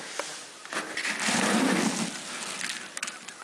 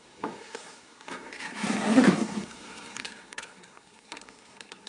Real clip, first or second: first